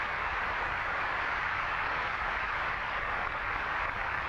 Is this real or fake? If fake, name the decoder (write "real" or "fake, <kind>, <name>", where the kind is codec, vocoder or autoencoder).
fake, codec, DAC